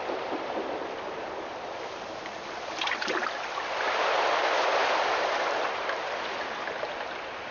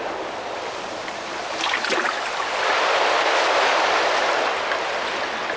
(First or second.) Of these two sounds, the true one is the second